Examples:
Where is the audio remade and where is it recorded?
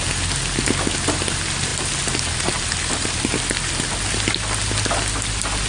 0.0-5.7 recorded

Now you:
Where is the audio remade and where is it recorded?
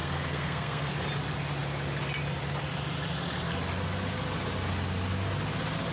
0.0-0.9 remade; 0.9-5.9 recorded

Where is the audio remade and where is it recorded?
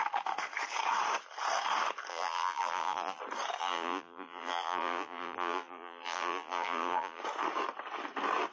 0.0-2.1 recorded; 2.1-3.2 remade; 3.2-3.6 recorded; 3.6-7.2 remade; 7.2-8.5 recorded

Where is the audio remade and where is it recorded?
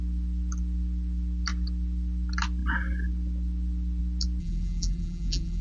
0.0-4.4 recorded; 4.4-5.6 remade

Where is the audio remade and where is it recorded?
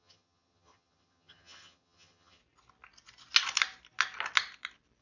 0.0-2.4 remade; 2.4-5.0 recorded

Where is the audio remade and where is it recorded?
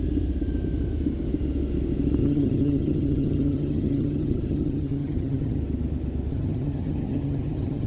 0.0-2.2 recorded; 2.2-5.6 remade; 5.6-6.3 recorded; 6.3-7.9 remade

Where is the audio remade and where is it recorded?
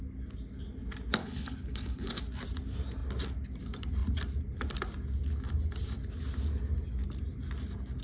0.0-1.2 recorded; 1.2-2.2 remade; 2.2-8.0 recorded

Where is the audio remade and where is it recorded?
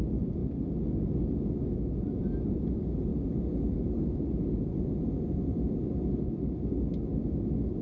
0.0-7.8 recorded